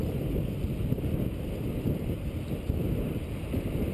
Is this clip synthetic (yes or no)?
yes